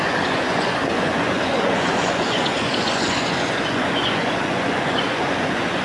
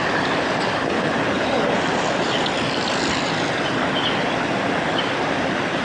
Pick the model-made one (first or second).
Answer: first